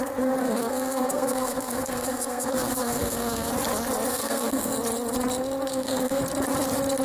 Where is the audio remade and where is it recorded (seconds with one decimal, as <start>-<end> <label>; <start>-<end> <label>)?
0.0-0.4 recorded; 0.4-3.5 remade; 3.5-4.1 recorded; 4.1-4.7 remade; 4.7-5.7 recorded; 5.7-6.2 remade; 6.2-7.0 recorded